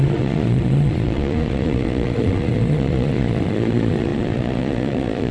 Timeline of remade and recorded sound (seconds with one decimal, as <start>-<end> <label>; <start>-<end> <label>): 0.0-5.3 remade

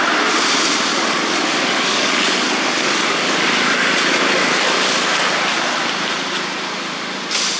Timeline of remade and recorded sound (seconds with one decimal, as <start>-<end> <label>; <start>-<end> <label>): 0.0-0.9 recorded; 0.9-4.9 remade; 4.9-7.6 recorded

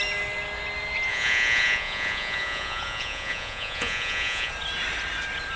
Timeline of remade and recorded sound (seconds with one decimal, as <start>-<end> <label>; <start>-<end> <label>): 0.0-1.1 recorded; 1.1-4.5 remade; 4.5-5.6 recorded

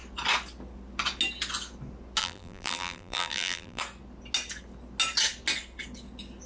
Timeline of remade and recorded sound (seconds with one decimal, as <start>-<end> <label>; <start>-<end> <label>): 0.0-2.2 recorded; 2.2-3.8 remade; 3.8-6.5 recorded

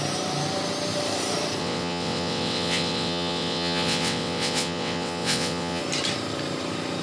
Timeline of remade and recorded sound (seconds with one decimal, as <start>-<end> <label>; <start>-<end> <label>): 0.0-1.6 recorded; 1.6-5.8 remade; 5.8-7.0 recorded

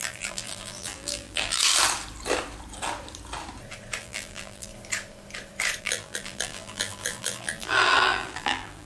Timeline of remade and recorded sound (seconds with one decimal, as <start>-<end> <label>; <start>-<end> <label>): 0.0-1.6 remade; 1.6-4.0 recorded; 4.0-4.7 remade; 4.7-5.8 recorded; 5.8-8.9 remade

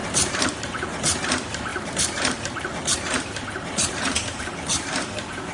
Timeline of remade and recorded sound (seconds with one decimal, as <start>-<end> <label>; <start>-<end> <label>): 0.0-0.6 remade; 0.6-1.7 recorded; 1.7-2.4 remade; 2.4-3.9 recorded; 3.9-4.5 remade; 4.5-5.5 recorded